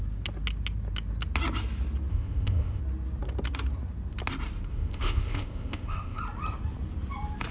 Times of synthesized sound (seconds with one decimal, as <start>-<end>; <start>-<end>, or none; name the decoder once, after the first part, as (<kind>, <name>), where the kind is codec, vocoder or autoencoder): 2.1-2.8 (codec, ZipCodec); 4.7-6.2